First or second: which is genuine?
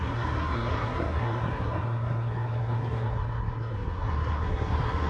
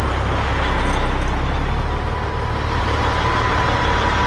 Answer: second